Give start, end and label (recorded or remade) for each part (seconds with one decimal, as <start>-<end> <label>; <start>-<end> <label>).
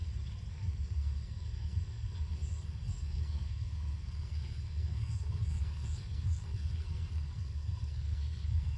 0.0-0.5 recorded; 0.5-8.8 remade